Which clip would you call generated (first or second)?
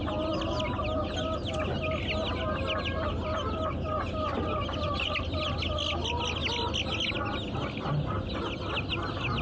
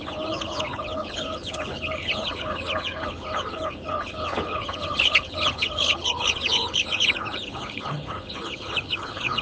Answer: second